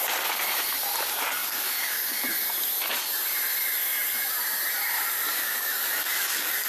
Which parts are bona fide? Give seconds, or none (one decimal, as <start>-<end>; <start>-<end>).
0.0-1.4; 2.4-5.3